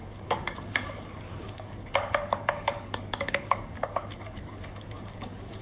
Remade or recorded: remade